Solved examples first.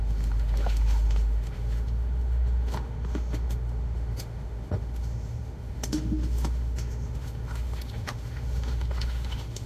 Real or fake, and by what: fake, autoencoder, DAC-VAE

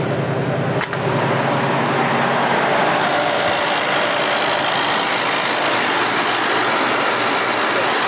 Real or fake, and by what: real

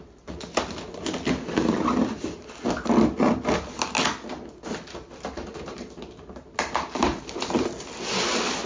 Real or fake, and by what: real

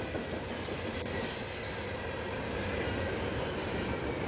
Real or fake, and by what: real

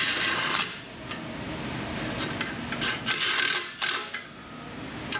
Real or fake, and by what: real